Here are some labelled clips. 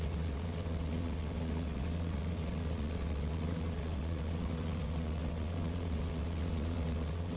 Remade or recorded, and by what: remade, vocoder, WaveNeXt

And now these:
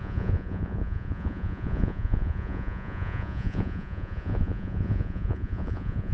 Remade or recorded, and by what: remade, vocoder, Vocos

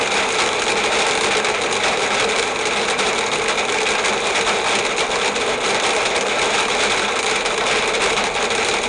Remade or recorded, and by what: recorded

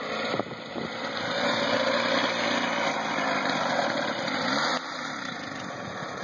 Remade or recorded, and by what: recorded